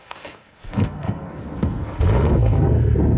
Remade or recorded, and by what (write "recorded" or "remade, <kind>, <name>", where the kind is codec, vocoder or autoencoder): remade, codec, SNAC